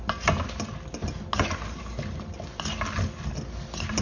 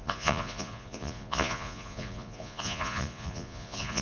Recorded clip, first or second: first